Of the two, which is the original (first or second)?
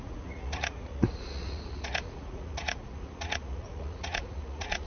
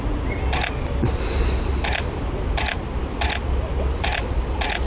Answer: second